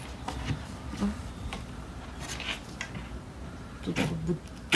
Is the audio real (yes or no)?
yes